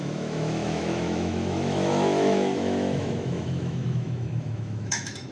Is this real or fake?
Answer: fake